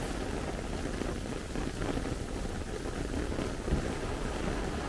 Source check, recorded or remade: recorded